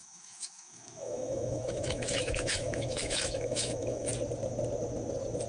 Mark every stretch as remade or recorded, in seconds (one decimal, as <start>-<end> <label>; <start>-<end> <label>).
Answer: 0.0-4.1 remade; 4.1-5.5 recorded